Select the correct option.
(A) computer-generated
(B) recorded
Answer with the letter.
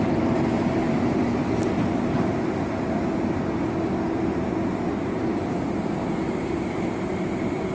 B